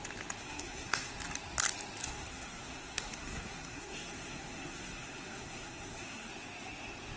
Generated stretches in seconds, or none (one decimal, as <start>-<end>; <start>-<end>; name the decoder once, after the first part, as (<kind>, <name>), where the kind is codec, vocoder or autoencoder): 0.4-1.1 (codec, SNAC); 2.0-6.3